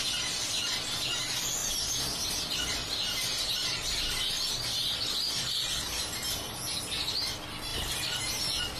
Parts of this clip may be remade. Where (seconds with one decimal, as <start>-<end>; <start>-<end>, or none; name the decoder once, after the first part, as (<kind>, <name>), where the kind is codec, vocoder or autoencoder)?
1.6-6.8 (vocoder, BigVGAN v2); 7.7-8.8